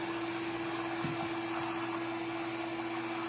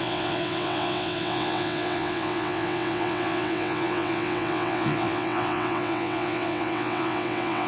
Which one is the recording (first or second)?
first